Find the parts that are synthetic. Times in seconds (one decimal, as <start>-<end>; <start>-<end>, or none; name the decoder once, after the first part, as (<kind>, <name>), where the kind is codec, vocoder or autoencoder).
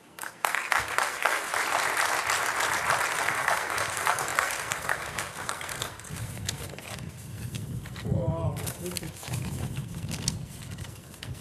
0.0-1.5 (codec, SNAC); 3.2-11.4